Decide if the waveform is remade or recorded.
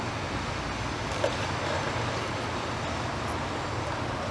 recorded